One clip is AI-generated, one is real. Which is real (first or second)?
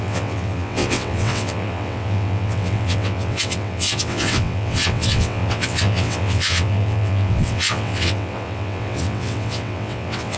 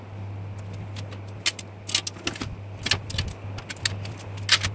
second